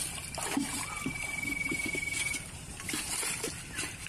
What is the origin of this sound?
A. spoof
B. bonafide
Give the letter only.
B